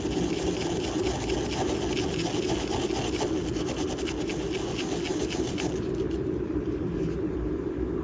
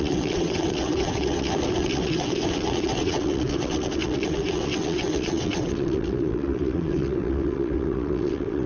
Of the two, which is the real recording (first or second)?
first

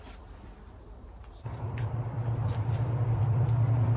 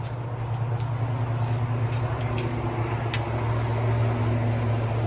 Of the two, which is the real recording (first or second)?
second